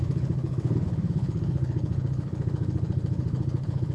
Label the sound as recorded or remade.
remade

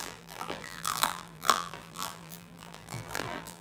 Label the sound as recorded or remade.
remade